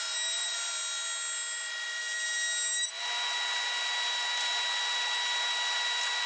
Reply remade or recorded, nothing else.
recorded